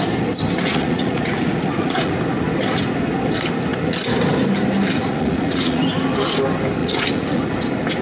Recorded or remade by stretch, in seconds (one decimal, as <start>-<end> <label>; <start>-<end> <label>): 0.0-0.7 recorded; 0.7-2.1 remade; 2.1-5.0 recorded; 5.0-5.8 remade; 5.8-6.8 recorded; 6.8-7.4 remade; 7.4-8.0 recorded